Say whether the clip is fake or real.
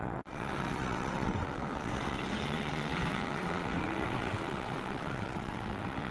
fake